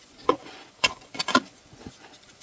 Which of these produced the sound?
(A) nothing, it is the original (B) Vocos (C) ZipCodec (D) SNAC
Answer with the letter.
B